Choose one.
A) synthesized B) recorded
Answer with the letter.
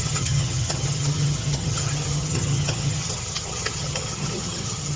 A